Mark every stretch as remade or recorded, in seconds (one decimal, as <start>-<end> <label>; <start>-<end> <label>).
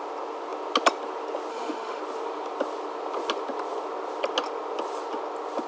0.0-1.5 recorded; 1.5-2.0 remade; 2.0-5.7 recorded